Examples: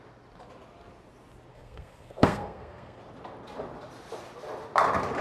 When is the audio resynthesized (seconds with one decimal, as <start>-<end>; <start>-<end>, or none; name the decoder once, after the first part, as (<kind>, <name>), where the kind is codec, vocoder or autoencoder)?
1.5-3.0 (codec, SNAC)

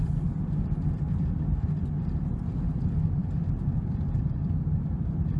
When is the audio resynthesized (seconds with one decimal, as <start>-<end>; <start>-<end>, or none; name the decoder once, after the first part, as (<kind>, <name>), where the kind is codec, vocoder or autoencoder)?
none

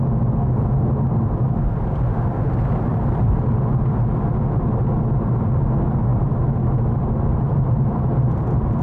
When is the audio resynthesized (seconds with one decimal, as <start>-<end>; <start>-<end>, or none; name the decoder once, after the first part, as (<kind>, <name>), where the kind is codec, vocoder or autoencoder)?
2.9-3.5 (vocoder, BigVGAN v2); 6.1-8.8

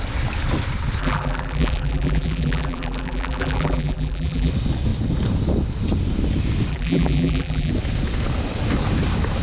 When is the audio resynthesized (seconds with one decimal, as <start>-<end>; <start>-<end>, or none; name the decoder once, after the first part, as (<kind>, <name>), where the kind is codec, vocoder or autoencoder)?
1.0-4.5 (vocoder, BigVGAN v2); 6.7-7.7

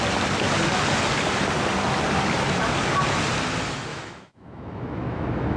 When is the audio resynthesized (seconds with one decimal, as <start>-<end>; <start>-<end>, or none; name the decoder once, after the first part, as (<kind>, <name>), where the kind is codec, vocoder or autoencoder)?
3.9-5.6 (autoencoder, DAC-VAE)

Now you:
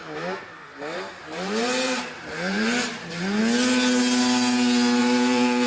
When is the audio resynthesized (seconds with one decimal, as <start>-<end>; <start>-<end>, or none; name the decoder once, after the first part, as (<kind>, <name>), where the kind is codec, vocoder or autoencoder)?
0.0-3.4 (vocoder, BigVGAN v2); 5.0-5.7

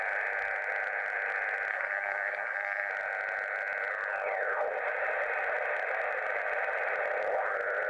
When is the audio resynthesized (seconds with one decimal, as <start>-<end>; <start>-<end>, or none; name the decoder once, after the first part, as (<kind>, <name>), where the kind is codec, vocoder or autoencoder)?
1.7-2.9 (codec, SNAC)

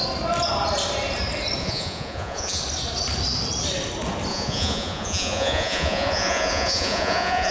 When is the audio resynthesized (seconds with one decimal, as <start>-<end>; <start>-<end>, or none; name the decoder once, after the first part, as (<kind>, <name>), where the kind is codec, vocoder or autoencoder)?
1.6-2.6 (vocoder, Vocos); 4.3-7.5